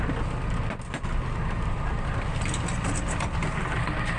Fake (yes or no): no